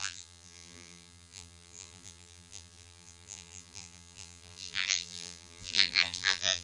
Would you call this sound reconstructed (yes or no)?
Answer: yes